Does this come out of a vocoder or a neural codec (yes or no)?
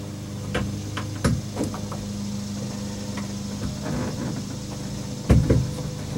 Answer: no